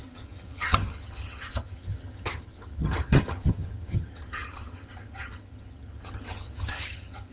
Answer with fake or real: fake